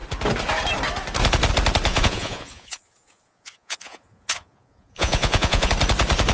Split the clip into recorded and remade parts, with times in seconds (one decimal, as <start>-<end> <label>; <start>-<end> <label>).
0.0-1.9 recorded; 1.9-5.7 remade; 5.7-6.3 recorded